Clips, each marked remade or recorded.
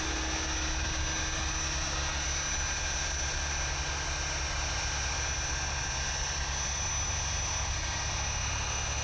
recorded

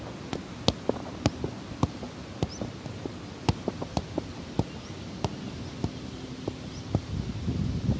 recorded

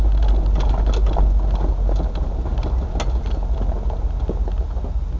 recorded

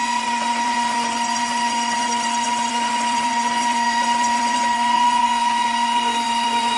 remade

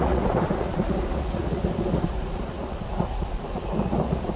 remade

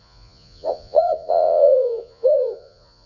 remade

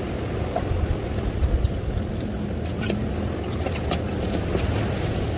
recorded